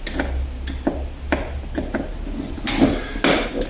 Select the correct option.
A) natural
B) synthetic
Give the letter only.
A